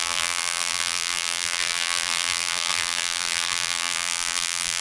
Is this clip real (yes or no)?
no